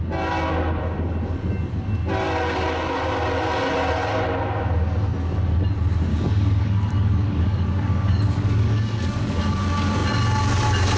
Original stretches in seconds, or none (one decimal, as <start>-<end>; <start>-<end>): 0.0-6.1; 9.4-11.0